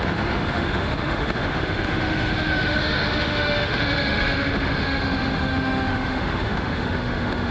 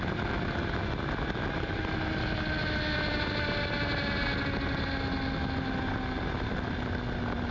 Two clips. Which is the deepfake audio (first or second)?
first